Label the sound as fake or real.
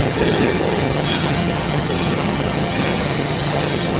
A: fake